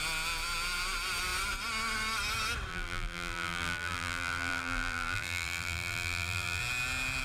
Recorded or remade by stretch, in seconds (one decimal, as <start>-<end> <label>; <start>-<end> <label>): 0.0-2.7 recorded; 2.7-6.6 remade; 6.6-7.2 recorded